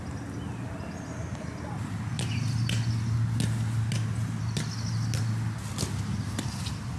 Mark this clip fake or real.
real